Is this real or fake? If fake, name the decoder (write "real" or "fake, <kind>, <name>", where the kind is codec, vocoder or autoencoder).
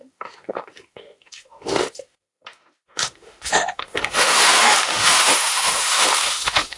fake, autoencoder, DAC-VAE